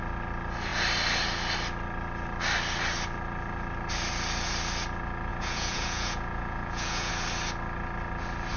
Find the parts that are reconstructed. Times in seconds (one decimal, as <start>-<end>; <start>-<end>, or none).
5.3-7.1